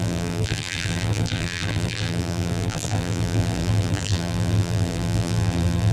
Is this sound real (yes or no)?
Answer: no